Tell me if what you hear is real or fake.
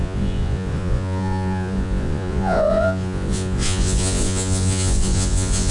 fake